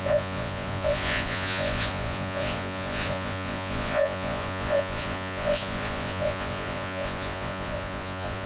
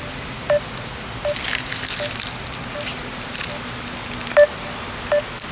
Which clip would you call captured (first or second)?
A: second